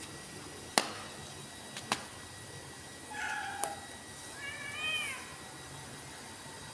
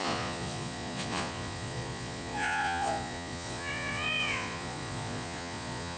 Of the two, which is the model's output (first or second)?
second